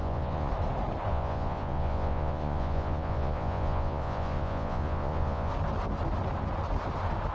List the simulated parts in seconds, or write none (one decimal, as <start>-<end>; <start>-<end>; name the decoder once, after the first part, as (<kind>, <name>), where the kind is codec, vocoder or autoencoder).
0.0-0.5 (vocoder, Vocos); 1.1-5.5